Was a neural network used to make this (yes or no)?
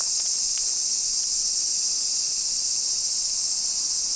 no